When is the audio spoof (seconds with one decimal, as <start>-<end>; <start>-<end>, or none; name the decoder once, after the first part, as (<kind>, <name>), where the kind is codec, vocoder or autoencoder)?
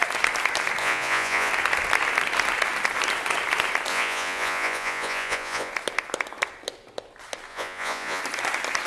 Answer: 0.8-1.5 (vocoder, Vocos); 3.9-5.7; 7.5-8.2